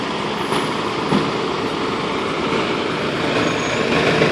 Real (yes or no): yes